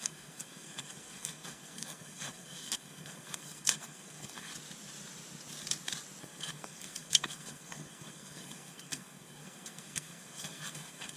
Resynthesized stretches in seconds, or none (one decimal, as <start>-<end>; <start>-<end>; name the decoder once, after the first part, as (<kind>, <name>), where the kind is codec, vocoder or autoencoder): 0.0-4.5 (codec, SNAC); 6.2-11.2